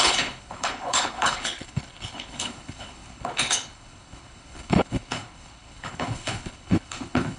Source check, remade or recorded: remade